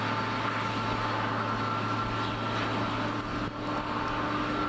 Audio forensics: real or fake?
real